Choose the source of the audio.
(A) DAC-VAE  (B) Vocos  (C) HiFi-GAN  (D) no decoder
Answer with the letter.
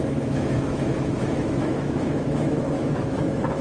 A